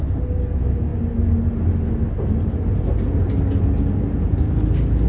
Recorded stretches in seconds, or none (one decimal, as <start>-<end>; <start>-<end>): 0.0-5.1